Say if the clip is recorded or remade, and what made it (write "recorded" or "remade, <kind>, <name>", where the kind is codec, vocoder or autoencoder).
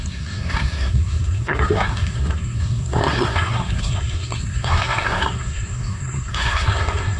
remade, codec, SNAC